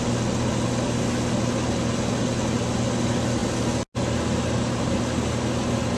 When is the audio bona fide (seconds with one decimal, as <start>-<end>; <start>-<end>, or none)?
0.0-6.0